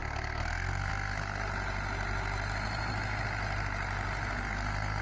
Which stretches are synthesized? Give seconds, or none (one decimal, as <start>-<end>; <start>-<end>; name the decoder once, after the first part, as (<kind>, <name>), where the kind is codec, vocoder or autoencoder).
0.0-1.4 (codec, SNAC); 4.4-5.0